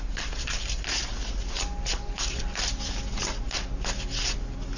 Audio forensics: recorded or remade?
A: recorded